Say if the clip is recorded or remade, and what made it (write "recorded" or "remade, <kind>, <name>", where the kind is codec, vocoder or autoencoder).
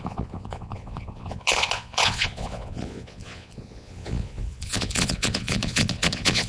remade, vocoder, Vocos